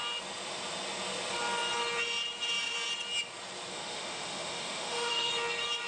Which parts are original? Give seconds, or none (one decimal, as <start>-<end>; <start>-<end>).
0.0-3.7; 5.3-5.9

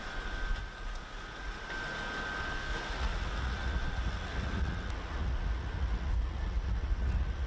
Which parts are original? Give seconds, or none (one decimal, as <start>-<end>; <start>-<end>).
0.0-0.6; 1.7-2.7

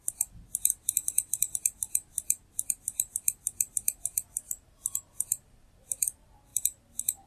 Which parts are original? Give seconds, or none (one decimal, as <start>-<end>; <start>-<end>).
0.0-7.3

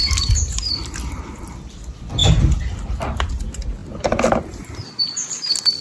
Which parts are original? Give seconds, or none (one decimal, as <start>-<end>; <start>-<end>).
0.0-5.8

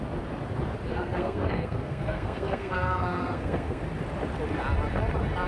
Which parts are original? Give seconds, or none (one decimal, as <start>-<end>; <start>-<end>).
0.0-0.9; 3.8-5.5